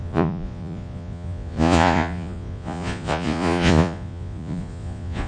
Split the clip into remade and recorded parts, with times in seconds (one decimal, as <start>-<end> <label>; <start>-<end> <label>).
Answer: 0.0-5.3 remade